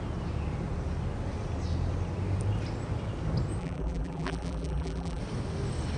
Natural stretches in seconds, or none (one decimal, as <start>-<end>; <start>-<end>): 0.0-3.6; 5.2-6.0